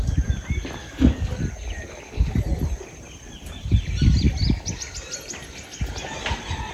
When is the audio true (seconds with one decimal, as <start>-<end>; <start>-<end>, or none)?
0.0-0.8; 1.3-6.7